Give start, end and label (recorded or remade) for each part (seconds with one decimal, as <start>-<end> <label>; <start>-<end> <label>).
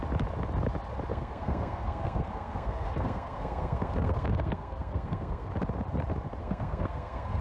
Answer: 0.0-1.1 recorded; 1.1-5.5 remade; 5.5-6.4 recorded; 6.4-7.4 remade